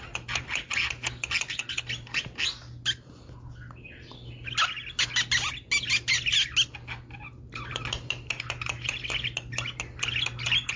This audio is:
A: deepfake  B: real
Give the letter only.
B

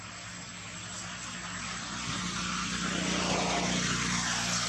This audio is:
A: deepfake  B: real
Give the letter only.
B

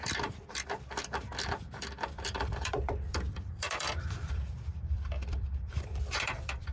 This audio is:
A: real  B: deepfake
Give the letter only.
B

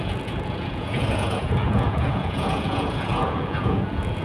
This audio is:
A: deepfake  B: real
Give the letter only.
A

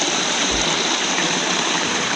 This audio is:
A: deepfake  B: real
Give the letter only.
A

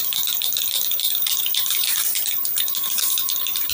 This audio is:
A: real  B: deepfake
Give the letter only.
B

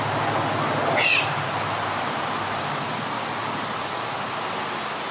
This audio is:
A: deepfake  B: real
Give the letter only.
B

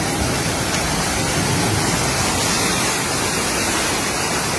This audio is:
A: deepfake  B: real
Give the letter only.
B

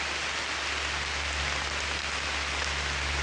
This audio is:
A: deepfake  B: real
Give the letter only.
B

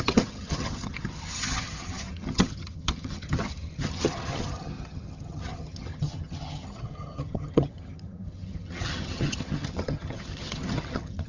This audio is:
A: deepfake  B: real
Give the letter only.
A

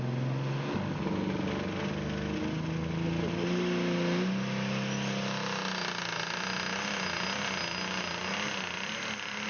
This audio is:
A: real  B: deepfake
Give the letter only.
A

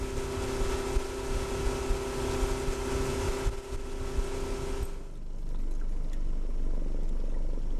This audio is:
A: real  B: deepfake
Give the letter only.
A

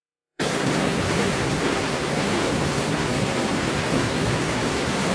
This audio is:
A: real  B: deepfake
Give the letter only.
B